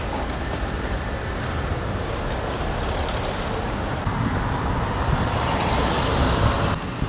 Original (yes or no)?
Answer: yes